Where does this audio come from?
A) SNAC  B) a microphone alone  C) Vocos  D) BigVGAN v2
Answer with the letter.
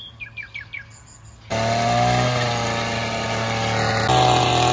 B